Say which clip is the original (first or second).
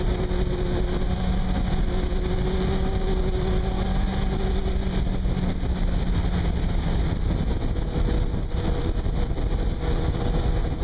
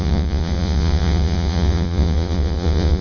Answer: first